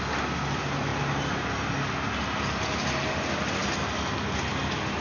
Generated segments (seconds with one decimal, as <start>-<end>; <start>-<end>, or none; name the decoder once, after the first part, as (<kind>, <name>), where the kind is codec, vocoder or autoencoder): none